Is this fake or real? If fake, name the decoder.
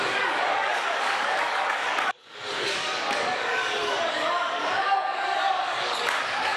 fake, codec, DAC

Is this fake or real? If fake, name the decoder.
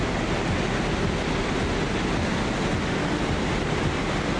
real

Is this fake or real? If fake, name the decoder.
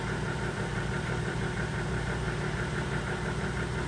fake, vocoder, BigVGAN v2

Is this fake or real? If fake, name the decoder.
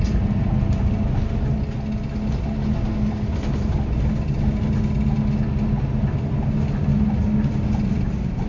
real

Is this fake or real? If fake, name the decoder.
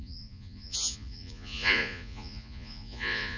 fake, vocoder, Vocos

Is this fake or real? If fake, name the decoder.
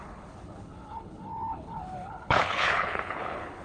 fake, codec, HILCodec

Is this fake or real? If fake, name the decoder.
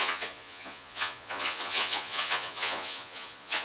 fake, vocoder, Vocos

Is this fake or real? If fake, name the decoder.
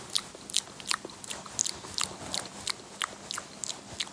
real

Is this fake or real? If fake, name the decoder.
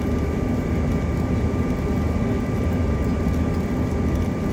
real